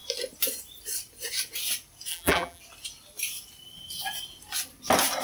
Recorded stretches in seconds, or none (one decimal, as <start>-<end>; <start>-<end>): 0.0-2.1; 2.6-5.2

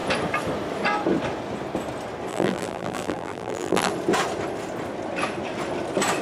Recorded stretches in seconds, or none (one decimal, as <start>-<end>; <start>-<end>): 0.0-2.3; 3.9-6.2